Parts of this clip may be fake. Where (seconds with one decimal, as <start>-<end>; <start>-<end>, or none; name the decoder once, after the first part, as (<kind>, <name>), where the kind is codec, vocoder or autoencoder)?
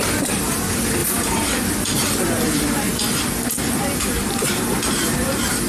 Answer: none